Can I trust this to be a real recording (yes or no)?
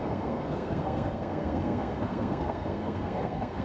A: no